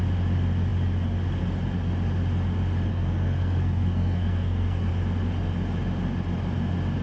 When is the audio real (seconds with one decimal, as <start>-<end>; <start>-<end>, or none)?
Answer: 0.0-2.9; 4.9-7.0